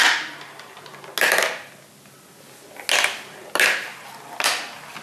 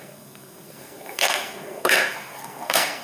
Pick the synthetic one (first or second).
second